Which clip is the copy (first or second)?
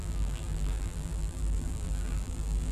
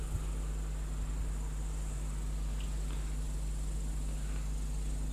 first